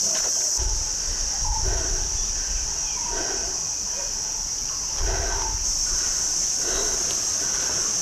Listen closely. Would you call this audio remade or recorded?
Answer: recorded